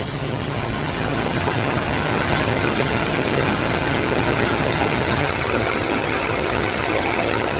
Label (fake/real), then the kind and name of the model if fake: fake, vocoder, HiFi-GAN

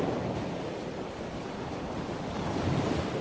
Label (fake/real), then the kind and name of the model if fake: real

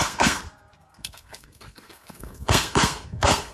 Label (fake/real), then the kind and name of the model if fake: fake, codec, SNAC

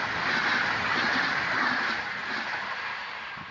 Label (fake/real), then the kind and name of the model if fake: real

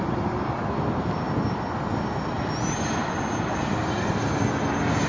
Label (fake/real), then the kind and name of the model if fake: real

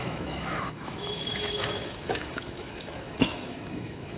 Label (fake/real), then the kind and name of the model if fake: fake, autoencoder, DAC-VAE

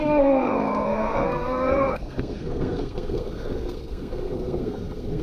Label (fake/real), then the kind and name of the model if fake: fake, codec, SNAC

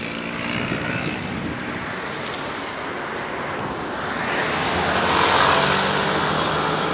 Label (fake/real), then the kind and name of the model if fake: real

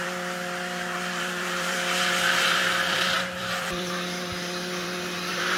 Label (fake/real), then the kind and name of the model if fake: fake, vocoder, BigVGAN v2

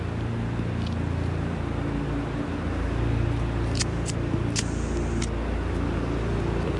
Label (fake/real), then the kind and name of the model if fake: real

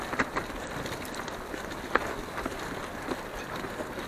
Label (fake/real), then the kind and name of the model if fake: real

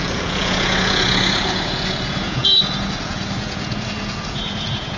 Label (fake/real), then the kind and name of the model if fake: fake, vocoder, Vocos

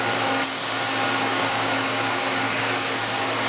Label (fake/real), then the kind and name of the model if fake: fake, codec, DAC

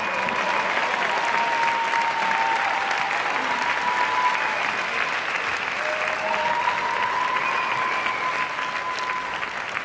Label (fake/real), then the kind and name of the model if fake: real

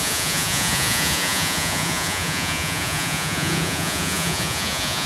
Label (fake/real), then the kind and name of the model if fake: fake, vocoder, Vocos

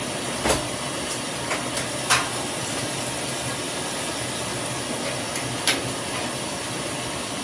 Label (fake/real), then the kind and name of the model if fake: real